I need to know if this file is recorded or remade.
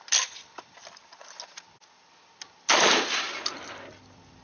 recorded